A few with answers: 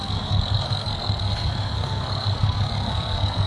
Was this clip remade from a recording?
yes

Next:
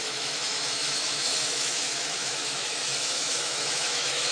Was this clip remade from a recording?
yes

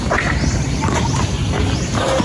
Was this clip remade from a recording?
no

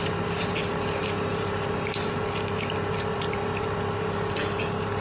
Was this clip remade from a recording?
no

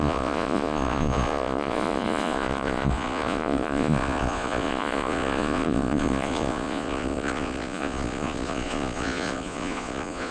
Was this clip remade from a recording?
yes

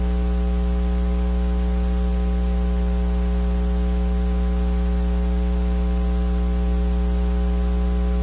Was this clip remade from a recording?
no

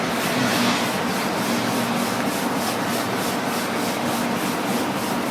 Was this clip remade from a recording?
no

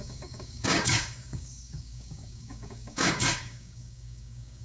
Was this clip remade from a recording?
yes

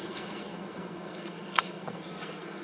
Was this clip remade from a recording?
yes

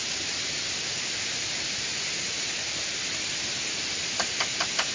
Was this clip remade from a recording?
no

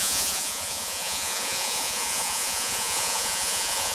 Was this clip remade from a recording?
yes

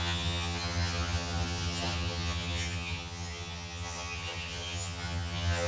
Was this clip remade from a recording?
yes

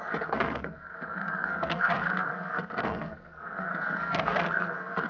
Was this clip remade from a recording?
yes